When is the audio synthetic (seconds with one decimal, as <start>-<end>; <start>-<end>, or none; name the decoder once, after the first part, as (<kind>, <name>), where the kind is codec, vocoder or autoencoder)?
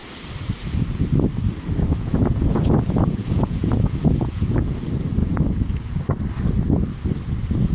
1.9-4.8 (vocoder, Vocos); 5.2-6.0